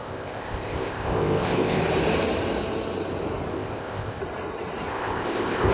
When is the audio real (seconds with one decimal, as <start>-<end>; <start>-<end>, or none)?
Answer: 1.8-3.5; 4.2-4.9